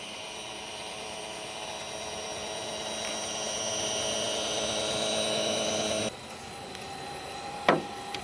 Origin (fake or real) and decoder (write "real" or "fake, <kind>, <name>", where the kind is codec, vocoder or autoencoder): real